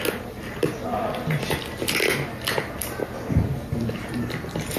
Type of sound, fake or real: real